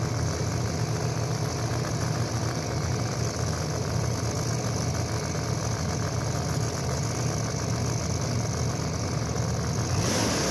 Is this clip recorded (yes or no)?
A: yes